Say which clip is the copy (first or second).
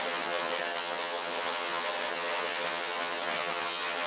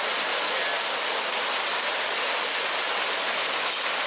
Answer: first